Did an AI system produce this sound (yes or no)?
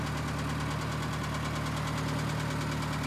no